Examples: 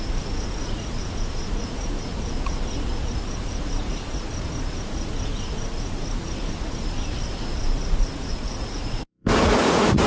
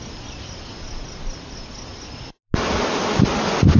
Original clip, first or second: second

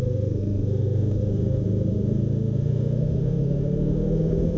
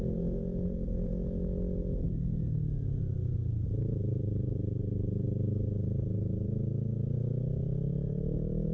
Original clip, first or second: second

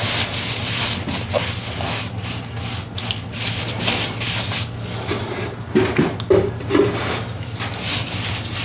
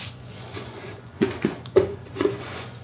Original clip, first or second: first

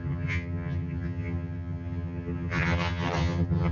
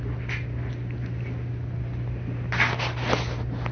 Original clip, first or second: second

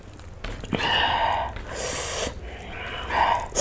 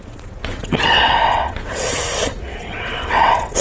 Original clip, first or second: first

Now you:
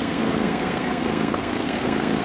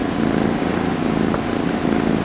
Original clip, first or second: second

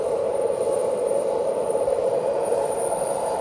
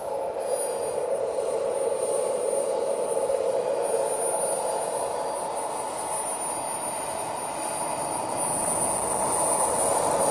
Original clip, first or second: second